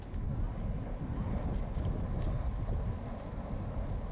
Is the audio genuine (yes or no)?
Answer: yes